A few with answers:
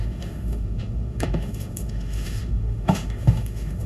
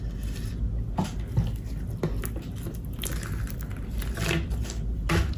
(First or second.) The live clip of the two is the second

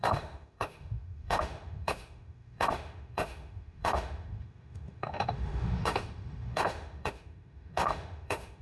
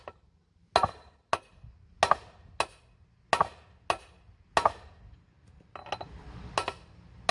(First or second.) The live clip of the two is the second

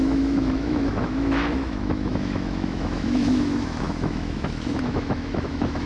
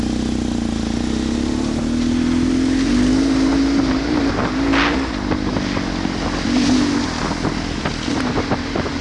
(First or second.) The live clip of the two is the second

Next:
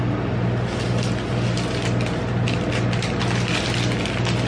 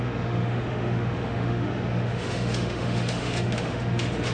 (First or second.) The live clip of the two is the first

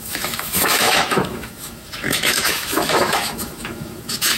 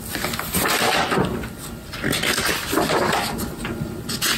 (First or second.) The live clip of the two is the second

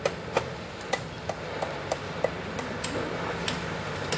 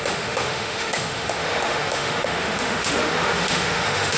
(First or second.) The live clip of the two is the first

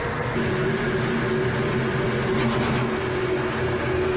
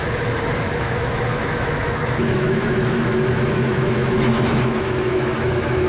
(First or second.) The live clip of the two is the first